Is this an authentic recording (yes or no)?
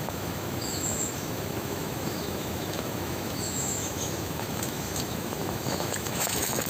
no